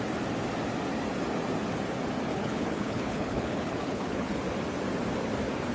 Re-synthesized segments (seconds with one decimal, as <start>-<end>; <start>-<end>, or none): 2.3-4.3